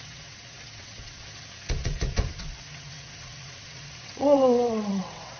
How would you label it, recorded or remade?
remade